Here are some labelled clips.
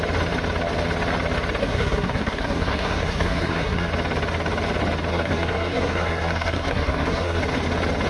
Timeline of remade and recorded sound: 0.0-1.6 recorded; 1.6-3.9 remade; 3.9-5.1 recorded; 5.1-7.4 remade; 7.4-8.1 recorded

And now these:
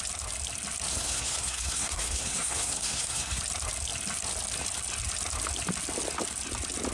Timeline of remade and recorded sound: 0.0-0.9 recorded; 0.9-3.4 remade; 3.4-6.9 recorded